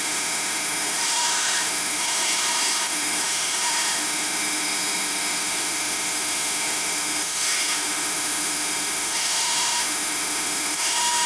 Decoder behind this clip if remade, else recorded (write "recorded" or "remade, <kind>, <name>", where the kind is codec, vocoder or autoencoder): remade, autoencoder, DAC-VAE